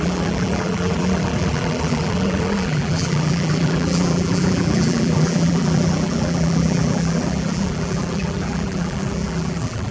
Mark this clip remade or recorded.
remade